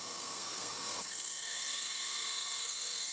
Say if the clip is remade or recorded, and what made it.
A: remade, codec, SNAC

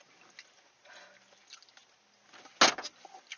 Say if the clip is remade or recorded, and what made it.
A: recorded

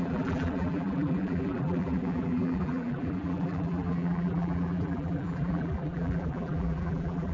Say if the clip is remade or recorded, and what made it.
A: remade, vocoder, BigVGAN v2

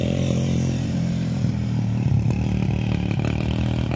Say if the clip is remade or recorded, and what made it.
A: remade, vocoder, BigVGAN v2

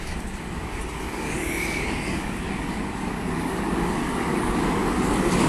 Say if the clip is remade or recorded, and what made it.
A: remade, codec, DAC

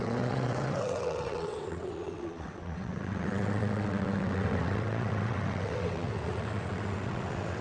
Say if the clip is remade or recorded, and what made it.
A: remade, vocoder, WaveNeXt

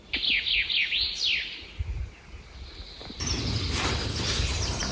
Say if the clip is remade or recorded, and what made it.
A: recorded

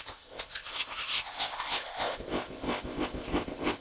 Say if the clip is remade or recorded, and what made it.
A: remade, codec, ZipCodec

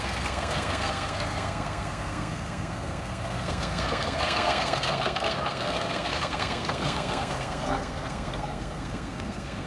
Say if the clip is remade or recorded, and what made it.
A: remade, codec, SNAC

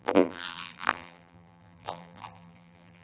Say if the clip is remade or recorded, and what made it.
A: remade, vocoder, BigVGAN v2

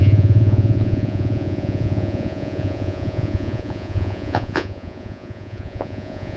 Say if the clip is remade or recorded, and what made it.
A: remade, vocoder, Vocos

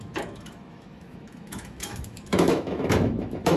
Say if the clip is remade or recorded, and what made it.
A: remade, autoencoder, DAC-VAE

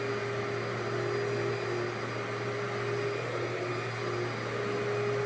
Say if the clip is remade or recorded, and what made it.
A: recorded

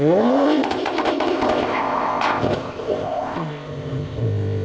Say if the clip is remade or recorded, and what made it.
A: remade, codec, ZipCodec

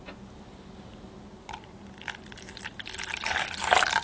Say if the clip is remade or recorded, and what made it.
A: recorded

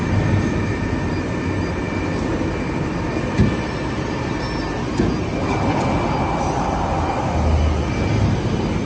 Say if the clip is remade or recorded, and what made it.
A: recorded